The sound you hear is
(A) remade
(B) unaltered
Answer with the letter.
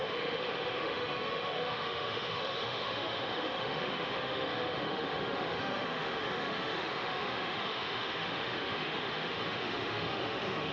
A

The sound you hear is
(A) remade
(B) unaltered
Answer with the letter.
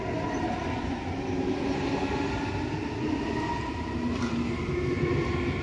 B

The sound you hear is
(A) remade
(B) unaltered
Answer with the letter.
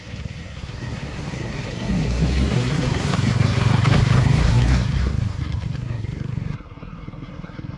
A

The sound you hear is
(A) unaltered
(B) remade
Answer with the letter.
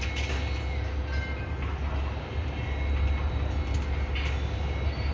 A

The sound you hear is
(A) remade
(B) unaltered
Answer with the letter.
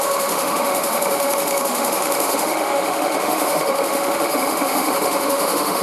A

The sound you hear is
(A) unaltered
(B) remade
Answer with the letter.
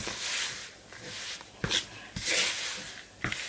A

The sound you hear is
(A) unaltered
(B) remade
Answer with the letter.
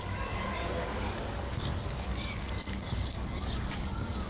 B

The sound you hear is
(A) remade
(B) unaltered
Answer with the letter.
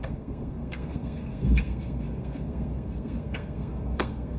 A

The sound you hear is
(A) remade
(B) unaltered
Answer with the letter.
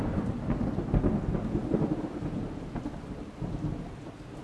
B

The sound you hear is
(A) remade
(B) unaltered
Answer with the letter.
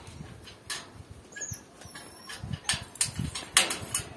B